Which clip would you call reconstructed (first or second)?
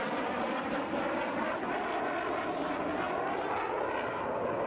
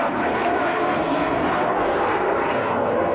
second